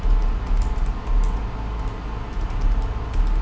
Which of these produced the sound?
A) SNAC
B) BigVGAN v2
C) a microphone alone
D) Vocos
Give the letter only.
C